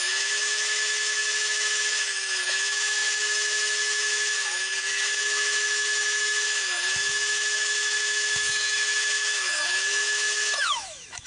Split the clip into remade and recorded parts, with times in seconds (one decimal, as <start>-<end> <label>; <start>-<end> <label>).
0.0-11.3 remade